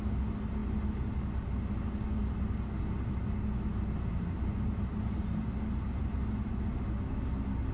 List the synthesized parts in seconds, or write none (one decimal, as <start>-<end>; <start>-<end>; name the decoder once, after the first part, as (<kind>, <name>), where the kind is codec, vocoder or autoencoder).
none